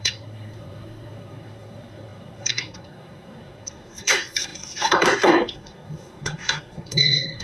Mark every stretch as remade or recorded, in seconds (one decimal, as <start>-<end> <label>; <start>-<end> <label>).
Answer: 0.0-7.4 remade